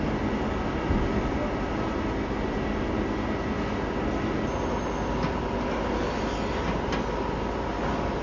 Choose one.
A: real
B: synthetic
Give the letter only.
A